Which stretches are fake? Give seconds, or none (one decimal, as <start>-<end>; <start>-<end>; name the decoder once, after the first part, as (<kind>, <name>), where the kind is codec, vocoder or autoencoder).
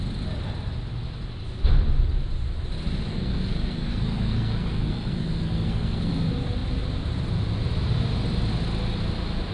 3.1-6.1 (codec, SNAC)